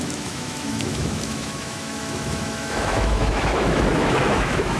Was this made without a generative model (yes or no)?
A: no